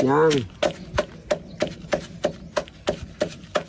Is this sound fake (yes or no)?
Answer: no